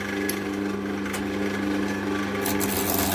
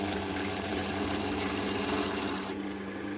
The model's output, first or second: second